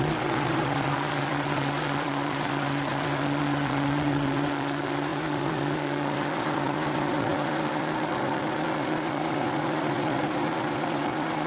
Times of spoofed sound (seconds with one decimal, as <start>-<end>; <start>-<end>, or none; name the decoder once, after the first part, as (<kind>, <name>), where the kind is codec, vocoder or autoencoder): 0.0-11.5 (vocoder, Vocos)